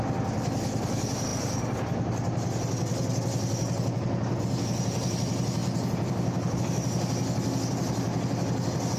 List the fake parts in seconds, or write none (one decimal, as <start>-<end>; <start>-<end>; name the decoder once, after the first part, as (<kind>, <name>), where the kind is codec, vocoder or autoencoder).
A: none

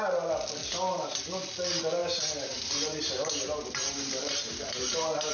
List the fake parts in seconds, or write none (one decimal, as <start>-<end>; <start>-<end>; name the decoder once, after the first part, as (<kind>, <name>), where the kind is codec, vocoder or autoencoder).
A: 0.6-1.3 (vocoder, BigVGAN v2); 2.0-5.3

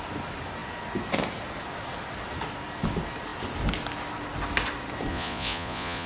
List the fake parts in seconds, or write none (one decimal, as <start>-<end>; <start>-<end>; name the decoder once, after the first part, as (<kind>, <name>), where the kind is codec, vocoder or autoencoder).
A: 5.1-6.1 (vocoder, Vocos)

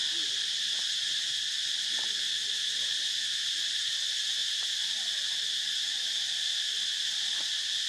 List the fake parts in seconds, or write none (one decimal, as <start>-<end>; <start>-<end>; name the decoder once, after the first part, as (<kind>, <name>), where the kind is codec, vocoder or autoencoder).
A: none